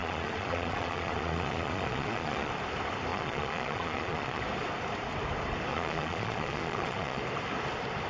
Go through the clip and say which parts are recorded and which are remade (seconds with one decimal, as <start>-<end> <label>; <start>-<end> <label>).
0.0-2.5 remade; 2.5-3.1 recorded; 3.1-4.4 remade; 4.4-5.7 recorded; 5.7-7.2 remade; 7.2-8.1 recorded